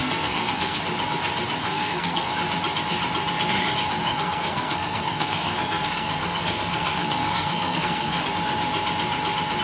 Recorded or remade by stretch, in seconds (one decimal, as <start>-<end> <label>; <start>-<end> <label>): 0.0-0.8 remade; 0.8-1.6 recorded; 1.6-2.3 remade; 2.3-4.0 recorded; 4.0-8.3 remade; 8.3-9.6 recorded